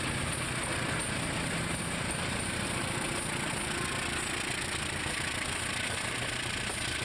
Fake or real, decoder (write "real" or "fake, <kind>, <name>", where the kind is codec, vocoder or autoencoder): real